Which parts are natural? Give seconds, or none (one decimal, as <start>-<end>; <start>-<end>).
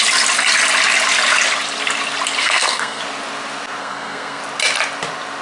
0.0-2.4; 3.0-3.8; 4.4-5.4